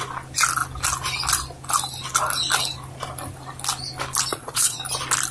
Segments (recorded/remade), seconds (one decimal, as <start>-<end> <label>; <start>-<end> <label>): 0.0-4.3 recorded; 4.3-4.8 remade; 4.8-5.3 recorded